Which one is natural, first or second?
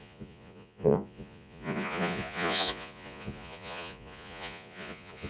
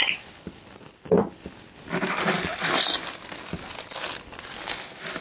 second